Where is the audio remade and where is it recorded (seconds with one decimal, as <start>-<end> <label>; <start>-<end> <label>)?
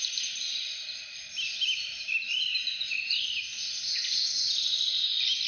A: 0.0-2.7 recorded; 2.7-3.4 remade; 3.4-5.5 recorded